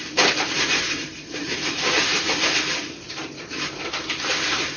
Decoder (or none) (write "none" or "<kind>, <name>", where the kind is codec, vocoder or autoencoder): vocoder, BigVGAN v2